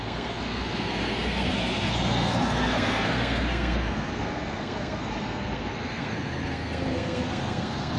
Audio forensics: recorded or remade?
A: remade